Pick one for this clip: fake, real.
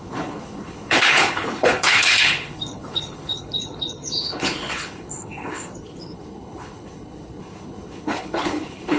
fake